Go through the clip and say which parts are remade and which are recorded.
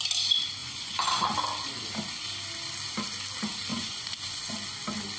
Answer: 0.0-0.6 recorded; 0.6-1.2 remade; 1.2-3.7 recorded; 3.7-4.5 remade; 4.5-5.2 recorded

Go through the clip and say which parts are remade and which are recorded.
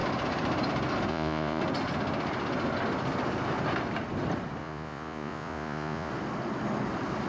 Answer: 0.0-1.1 recorded; 1.1-1.6 remade; 1.6-4.6 recorded; 4.6-6.1 remade; 6.1-7.3 recorded